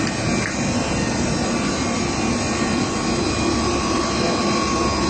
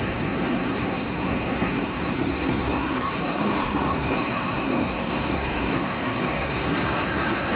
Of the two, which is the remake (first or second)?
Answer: second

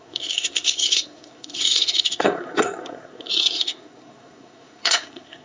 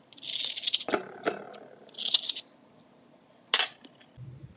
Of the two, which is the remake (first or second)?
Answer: first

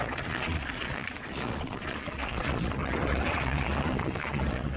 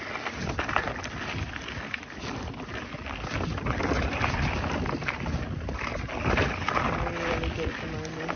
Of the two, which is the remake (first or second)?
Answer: first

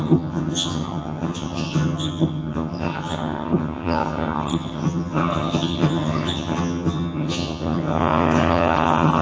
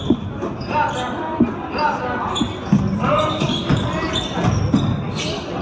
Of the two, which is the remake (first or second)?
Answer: first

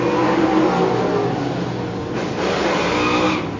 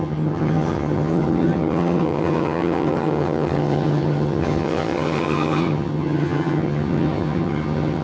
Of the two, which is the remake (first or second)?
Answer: second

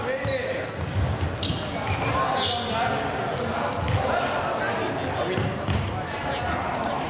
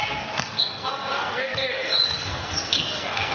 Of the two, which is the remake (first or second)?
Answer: second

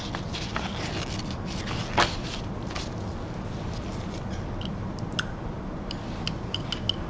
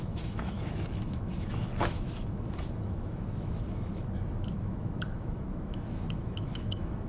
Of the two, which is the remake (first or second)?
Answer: second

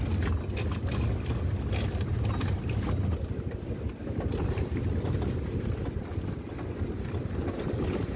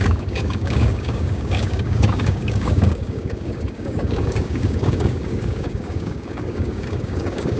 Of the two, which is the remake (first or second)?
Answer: second